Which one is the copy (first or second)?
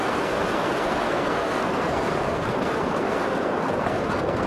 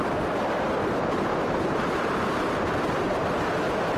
first